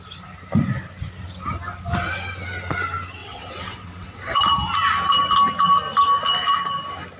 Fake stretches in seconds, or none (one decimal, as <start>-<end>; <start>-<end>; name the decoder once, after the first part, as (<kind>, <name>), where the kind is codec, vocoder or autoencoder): 3.2-4.4 (vocoder, WaveNeXt)